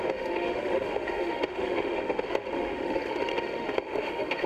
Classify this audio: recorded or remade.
remade